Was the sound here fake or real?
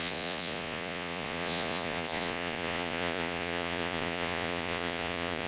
fake